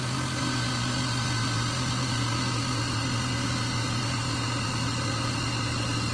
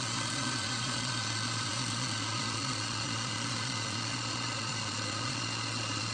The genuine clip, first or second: first